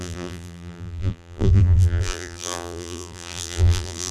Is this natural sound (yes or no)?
no